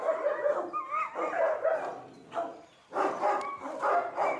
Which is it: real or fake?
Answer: real